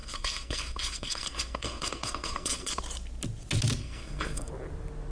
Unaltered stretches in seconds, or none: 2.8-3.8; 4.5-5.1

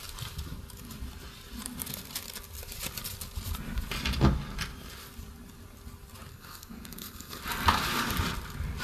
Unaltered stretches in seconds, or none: 0.0-6.3; 7.4-8.8

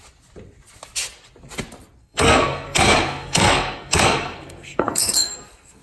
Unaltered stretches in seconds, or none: 0.0-2.0

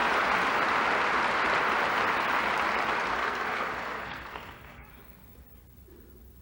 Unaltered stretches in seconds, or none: 0.0-3.1; 4.9-6.4

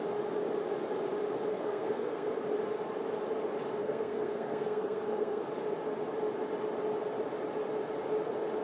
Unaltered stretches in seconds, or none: 0.0-1.5; 2.3-3.8; 5.4-8.6

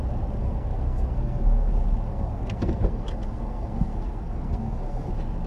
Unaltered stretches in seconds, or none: 0.0-0.4; 1.7-2.1; 5.1-5.5

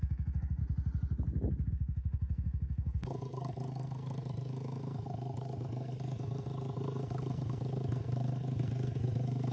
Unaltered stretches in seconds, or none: 0.6-1.7